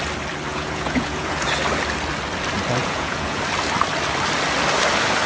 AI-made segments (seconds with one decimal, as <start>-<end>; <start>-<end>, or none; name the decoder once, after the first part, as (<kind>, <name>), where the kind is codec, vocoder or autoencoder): 0.5-1.5 (vocoder, Vocos); 2.8-3.4